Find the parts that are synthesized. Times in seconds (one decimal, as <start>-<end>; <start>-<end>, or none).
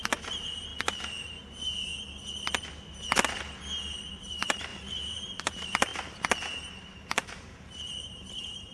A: 0.0-0.7; 1.3-1.9; 4.1-5.9; 6.8-8.7